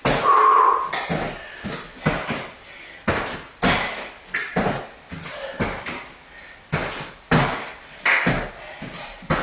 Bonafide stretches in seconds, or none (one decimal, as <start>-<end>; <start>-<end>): 0.0-9.4